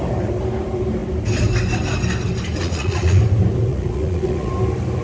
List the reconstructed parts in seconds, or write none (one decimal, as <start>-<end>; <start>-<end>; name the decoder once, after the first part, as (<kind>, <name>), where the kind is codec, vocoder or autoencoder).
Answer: 2.6-3.2 (vocoder, Vocos); 3.7-4.5

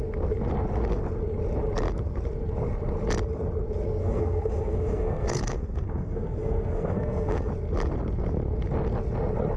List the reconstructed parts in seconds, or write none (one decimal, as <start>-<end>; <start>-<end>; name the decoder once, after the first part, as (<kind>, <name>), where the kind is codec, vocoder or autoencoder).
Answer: 4.0-7.5 (codec, SNAC)

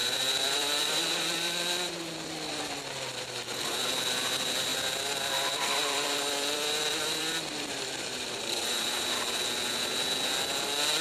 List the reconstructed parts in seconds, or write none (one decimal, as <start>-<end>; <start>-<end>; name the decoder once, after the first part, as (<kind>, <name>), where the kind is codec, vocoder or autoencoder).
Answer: 0.0-2.1 (vocoder, BigVGAN v2); 4.7-9.2

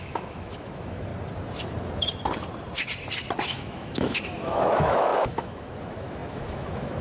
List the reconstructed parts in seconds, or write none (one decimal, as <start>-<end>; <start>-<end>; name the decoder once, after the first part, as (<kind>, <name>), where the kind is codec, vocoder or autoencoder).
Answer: 0.0-1.1 (autoencoder, DAC-VAE); 3.5-7.0

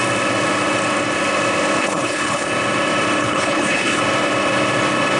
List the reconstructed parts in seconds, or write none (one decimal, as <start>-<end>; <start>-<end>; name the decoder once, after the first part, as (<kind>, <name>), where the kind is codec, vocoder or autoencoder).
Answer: 1.8-2.5 (codec, HILCodec); 3.2-4.0

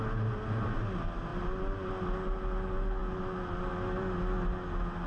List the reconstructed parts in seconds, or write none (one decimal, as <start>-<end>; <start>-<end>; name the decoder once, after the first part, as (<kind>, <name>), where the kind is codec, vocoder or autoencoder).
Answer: none

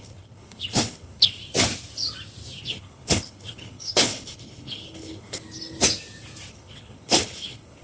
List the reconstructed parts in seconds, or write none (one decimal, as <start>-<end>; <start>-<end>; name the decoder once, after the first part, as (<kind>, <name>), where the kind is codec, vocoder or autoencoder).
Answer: 0.0-1.4 (codec, HILCodec); 2.6-5.4; 6.5-7.8